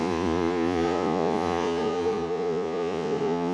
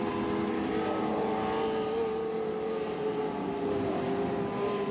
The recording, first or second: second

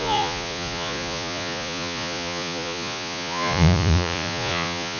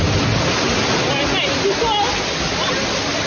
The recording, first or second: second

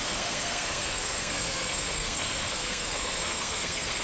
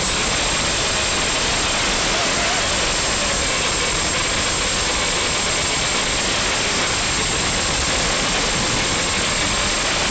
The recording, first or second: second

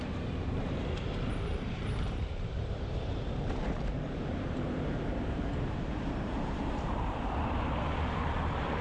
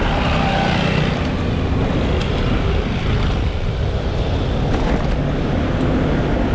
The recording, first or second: second